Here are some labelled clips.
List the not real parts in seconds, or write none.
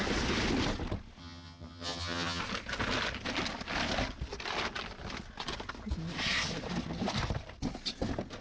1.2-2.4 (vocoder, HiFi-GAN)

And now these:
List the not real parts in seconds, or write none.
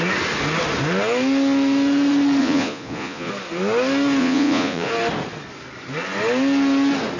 2.4-3.3 (vocoder, Vocos); 4.2-4.9